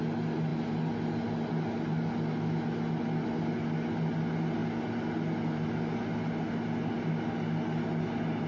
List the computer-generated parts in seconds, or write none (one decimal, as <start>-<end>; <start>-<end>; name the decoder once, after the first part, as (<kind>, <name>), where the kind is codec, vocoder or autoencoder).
none